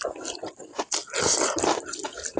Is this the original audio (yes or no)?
no